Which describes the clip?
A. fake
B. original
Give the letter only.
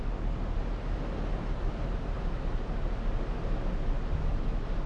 B